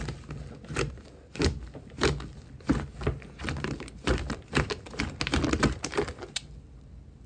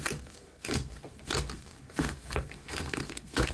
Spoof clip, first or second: second